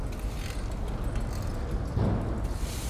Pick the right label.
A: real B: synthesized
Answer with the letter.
A